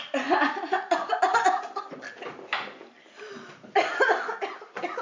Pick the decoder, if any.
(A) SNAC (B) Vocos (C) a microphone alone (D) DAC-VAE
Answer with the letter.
C